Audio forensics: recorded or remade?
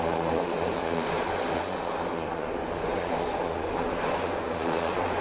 remade